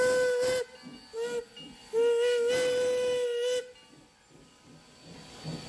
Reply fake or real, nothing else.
real